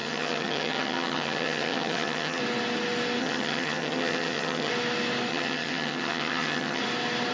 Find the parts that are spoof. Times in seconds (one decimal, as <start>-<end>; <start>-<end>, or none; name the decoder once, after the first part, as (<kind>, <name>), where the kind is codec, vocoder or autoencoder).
0.0-2.4 (vocoder, HiFi-GAN); 3.2-4.7; 5.3-6.8